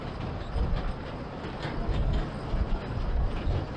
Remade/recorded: recorded